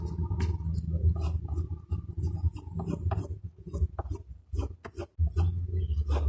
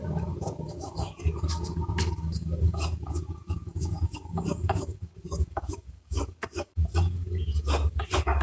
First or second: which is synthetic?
second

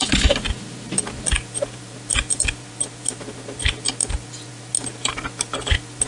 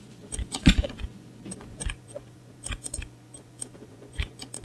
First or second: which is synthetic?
second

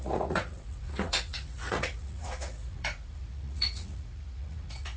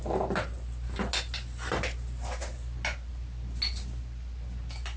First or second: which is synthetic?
first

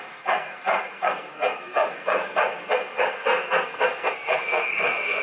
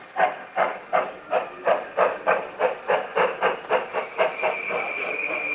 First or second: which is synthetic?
first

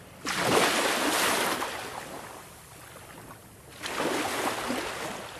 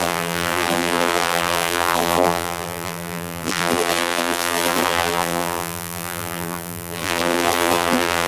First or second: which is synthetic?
second